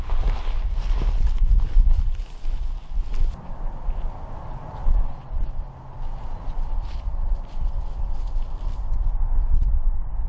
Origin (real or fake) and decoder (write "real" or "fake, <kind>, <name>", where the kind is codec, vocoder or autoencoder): real